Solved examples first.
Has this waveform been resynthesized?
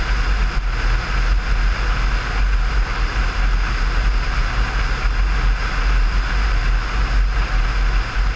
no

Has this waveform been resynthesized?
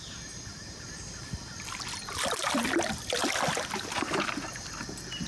no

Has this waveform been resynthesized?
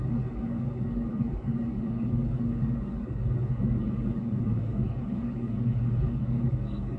yes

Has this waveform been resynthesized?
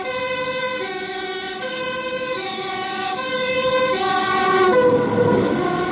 yes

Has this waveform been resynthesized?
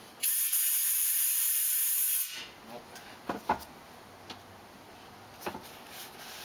no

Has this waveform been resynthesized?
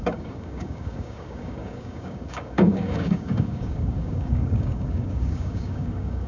yes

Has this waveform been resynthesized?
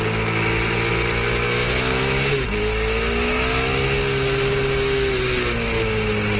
no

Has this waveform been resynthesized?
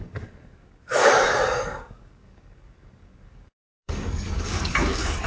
yes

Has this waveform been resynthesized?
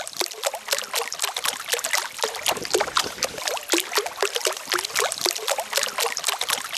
no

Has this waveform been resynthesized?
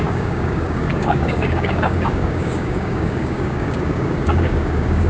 yes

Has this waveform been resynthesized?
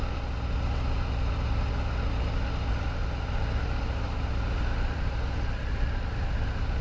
no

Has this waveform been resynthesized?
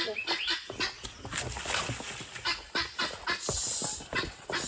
no